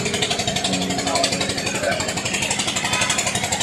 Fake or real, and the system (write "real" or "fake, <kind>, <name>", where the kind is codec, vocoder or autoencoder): fake, vocoder, BigVGAN v2